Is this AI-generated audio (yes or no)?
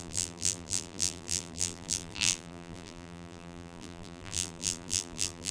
yes